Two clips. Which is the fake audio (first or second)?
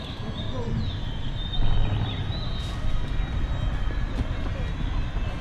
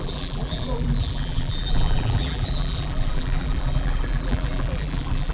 second